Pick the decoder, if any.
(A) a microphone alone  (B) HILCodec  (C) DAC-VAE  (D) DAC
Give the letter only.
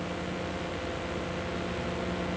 A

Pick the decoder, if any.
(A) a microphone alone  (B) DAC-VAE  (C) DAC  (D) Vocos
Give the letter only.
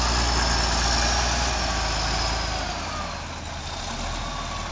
A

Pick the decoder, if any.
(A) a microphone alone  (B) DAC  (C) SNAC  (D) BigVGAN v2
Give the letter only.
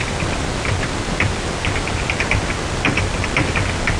A